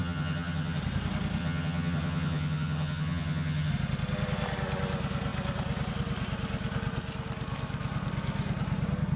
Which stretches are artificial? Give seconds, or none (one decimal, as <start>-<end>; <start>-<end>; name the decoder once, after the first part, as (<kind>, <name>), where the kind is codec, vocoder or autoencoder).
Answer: 0.0-0.8 (vocoder, HiFi-GAN); 1.4-3.7